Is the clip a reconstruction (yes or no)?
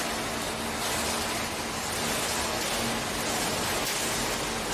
no